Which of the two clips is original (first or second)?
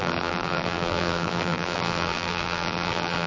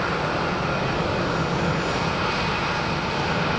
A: second